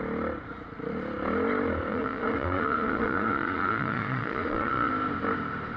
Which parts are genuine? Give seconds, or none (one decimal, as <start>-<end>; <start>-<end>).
0.0-1.9; 4.9-5.8